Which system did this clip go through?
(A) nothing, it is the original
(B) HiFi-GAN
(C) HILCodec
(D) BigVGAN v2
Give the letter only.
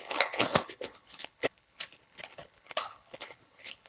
C